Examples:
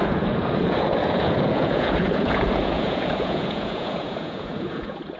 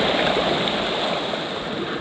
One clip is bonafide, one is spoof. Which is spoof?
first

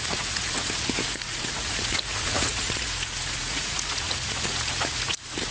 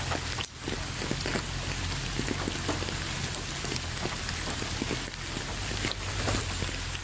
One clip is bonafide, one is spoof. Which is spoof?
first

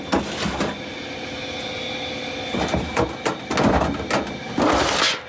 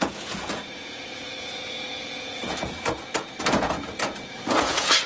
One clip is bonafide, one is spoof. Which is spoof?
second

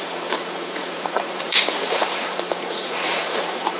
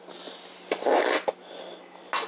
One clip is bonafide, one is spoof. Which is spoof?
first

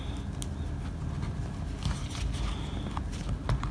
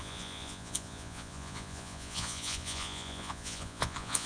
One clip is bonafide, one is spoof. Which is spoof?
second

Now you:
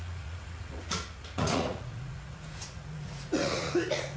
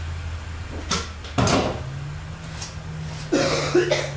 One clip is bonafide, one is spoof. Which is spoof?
first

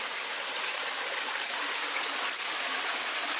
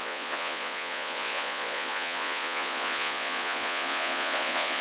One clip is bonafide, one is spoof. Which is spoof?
second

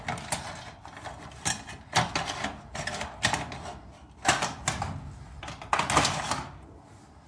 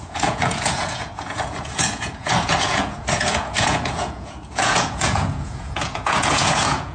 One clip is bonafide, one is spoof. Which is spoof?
second